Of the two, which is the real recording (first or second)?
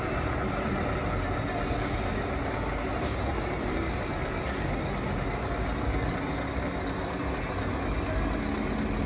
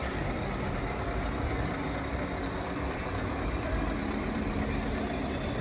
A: first